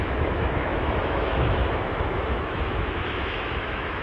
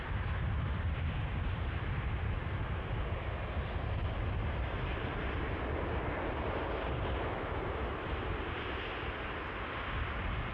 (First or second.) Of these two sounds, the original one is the second